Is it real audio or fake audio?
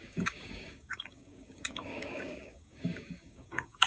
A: fake